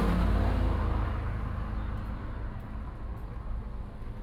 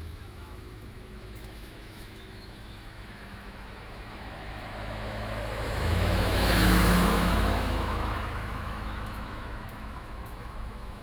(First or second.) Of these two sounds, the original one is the first